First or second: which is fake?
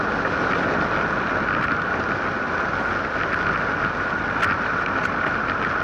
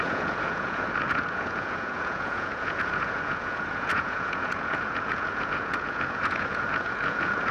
second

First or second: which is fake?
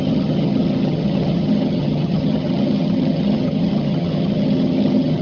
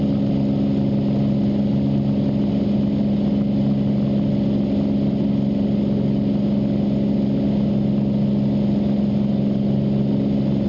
first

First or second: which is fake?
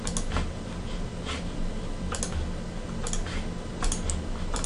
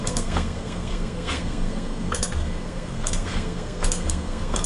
second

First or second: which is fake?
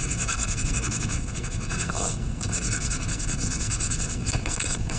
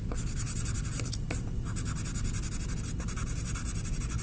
first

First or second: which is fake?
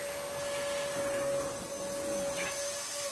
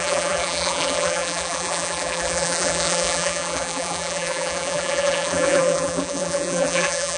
second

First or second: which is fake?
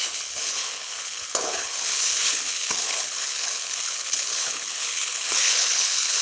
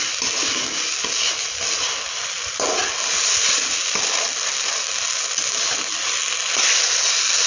first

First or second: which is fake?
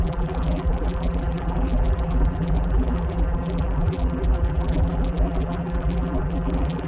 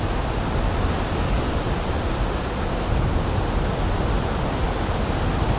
first